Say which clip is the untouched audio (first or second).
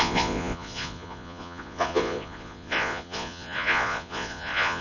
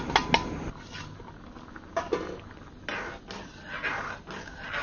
second